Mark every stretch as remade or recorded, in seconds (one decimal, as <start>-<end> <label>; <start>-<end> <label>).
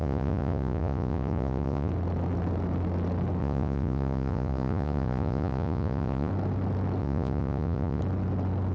0.0-1.9 remade; 1.9-3.4 recorded; 3.4-6.3 remade; 6.3-7.0 recorded; 7.0-8.0 remade; 8.0-8.7 recorded